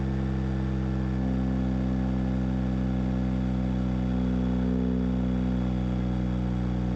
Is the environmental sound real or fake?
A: real